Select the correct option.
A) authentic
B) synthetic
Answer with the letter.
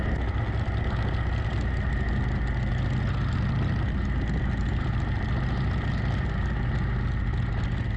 A